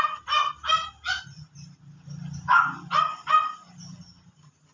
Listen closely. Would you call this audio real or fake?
real